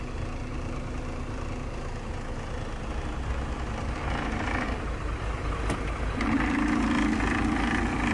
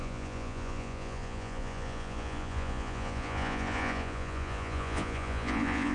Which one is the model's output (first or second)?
second